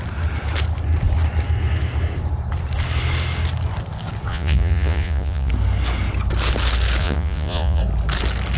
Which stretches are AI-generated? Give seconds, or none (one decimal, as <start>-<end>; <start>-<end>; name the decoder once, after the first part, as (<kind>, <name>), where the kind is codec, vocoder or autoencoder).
4.3-5.5 (vocoder, Vocos); 7.0-7.8